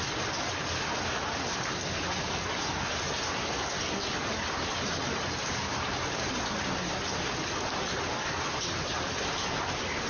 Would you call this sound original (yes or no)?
yes